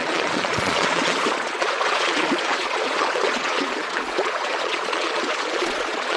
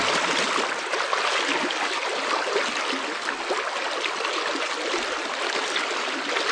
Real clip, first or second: second